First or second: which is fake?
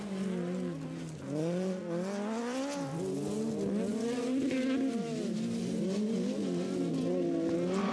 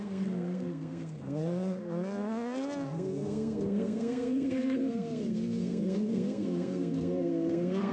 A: second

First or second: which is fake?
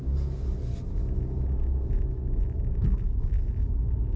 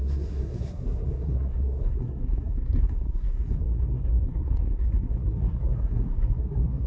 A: second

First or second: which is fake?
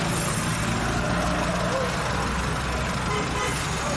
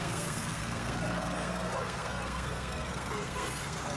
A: second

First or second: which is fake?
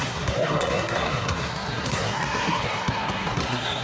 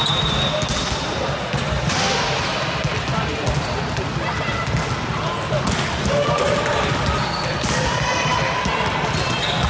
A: first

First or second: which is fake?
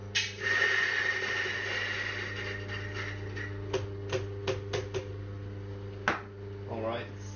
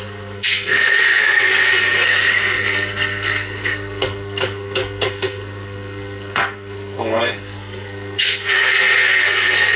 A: second